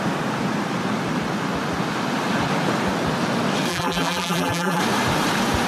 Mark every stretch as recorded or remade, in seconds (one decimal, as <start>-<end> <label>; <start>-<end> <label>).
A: 0.0-3.7 recorded; 3.7-4.8 remade; 4.8-5.7 recorded